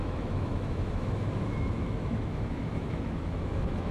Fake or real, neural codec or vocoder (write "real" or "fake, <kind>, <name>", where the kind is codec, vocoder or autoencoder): fake, autoencoder, DAC-VAE